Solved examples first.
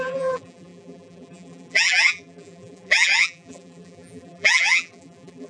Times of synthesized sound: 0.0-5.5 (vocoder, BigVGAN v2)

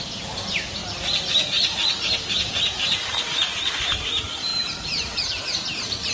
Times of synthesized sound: 0.0-0.8 (vocoder, BigVGAN v2); 2.3-6.1

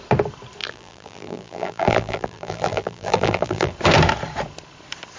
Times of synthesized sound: 0.6-3.7 (vocoder, BigVGAN v2)

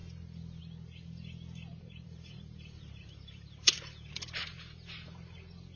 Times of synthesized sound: 1.7-5.2 (vocoder, BigVGAN v2)

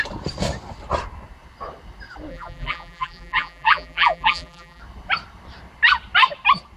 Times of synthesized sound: 2.3-4.8 (vocoder, BigVGAN v2)

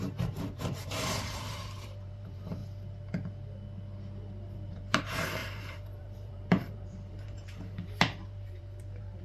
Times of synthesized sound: 0.0-2.6 (vocoder, BigVGAN v2); 4.7-9.2

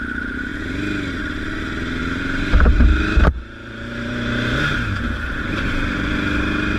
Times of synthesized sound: 2.0-6.1 (vocoder, BigVGAN v2)